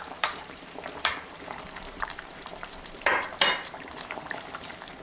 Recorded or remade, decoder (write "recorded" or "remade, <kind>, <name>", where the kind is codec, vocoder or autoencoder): remade, vocoder, BigVGAN v2